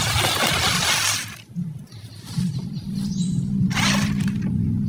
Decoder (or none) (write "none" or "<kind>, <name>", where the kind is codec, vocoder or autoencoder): none